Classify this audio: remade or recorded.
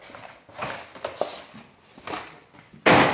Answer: recorded